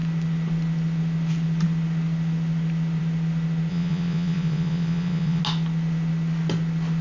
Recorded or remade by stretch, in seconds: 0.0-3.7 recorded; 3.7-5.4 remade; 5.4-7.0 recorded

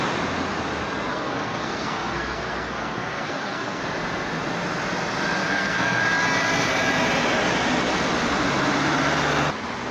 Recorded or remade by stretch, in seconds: 0.0-1.1 recorded; 1.1-3.8 remade; 3.8-5.4 recorded; 5.4-6.0 remade; 6.0-9.9 recorded

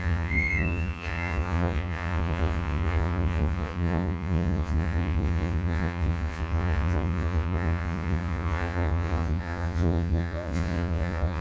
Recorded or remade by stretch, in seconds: 0.0-11.4 remade

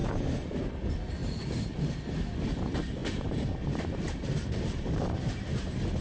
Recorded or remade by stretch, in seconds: 0.0-0.6 remade; 0.6-1.2 recorded; 1.2-2.3 remade; 2.3-3.0 recorded; 3.0-5.5 remade; 5.5-6.0 recorded

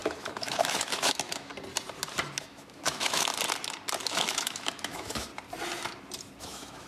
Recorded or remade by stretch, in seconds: 0.0-1.5 remade; 1.5-2.4 recorded; 2.4-3.3 remade; 3.3-4.0 recorded; 4.0-5.3 remade; 5.3-6.4 recorded; 6.4-6.9 remade

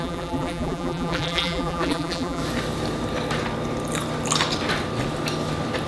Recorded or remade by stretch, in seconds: 0.0-2.4 remade; 2.4-5.9 recorded